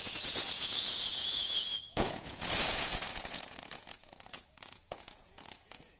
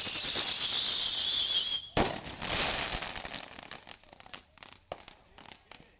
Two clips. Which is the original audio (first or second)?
second